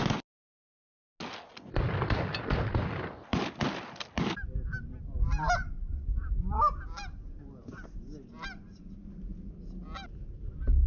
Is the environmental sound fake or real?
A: real